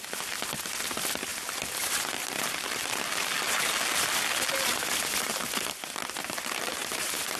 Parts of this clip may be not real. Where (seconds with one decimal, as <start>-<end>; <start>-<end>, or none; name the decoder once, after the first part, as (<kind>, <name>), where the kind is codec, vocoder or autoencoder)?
6.8-7.4 (vocoder, BigVGAN v2)